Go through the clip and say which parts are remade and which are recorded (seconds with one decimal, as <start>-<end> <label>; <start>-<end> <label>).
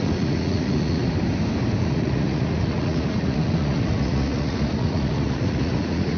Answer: 0.0-1.0 remade; 1.0-1.8 recorded; 1.8-6.2 remade